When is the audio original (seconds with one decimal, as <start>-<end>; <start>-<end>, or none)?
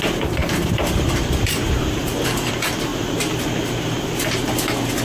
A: 0.0-0.4; 2.5-2.9; 4.5-5.0